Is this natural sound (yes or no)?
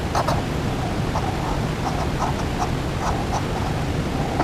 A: yes